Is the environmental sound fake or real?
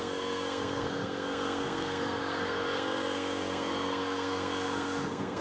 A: fake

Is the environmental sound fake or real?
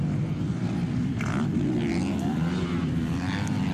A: real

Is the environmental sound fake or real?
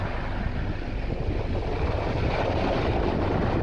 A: real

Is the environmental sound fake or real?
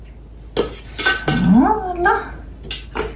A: real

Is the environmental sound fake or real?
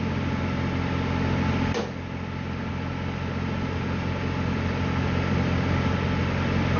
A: real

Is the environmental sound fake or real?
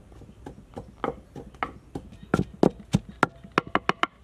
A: real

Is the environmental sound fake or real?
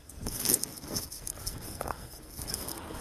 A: fake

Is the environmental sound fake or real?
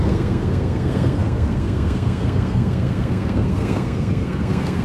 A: fake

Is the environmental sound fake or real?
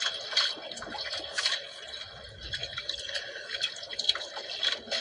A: real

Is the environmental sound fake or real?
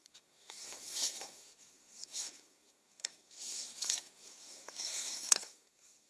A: fake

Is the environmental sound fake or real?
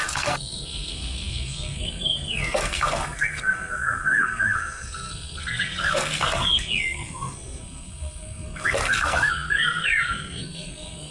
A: fake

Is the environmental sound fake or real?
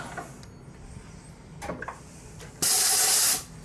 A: real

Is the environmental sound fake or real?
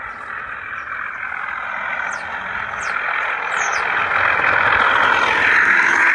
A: real